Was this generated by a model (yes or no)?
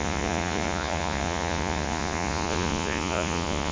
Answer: yes